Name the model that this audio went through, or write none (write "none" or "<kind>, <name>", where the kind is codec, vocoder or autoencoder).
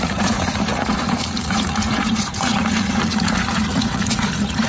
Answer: vocoder, Vocos